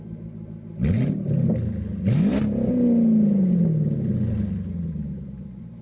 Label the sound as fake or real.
real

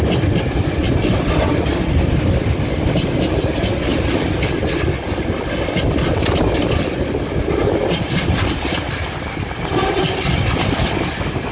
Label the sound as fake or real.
real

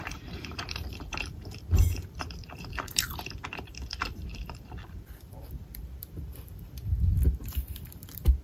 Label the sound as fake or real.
fake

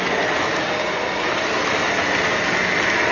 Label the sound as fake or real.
real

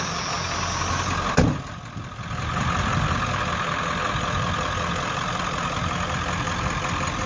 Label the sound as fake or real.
real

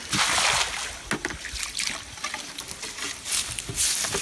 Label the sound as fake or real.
real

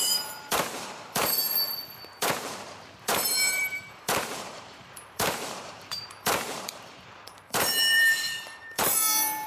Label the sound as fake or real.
fake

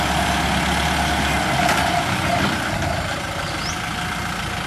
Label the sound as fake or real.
real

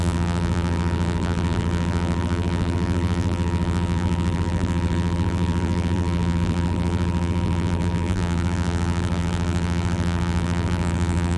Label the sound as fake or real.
fake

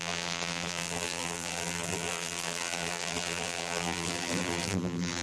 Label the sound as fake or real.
fake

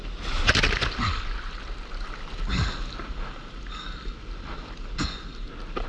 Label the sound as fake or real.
real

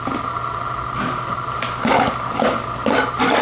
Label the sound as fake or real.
real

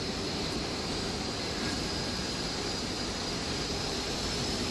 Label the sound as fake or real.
fake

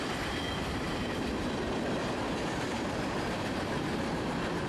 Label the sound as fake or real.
fake